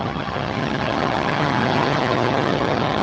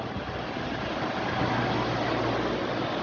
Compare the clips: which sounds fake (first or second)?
first